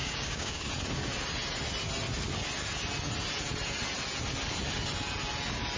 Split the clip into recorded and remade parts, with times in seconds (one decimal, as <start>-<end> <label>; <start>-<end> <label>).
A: 0.0-0.7 remade; 0.7-5.8 recorded